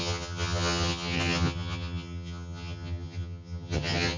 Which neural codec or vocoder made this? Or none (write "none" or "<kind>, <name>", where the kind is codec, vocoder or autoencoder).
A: vocoder, HiFi-GAN